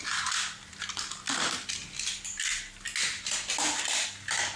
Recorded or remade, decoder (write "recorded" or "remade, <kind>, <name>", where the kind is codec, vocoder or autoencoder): recorded